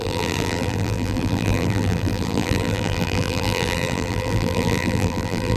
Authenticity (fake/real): fake